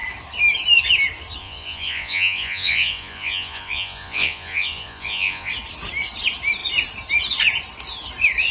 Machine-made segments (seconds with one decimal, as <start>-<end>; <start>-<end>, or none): 1.4-5.5